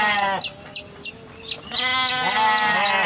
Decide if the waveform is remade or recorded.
recorded